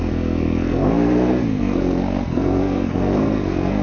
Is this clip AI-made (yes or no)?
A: yes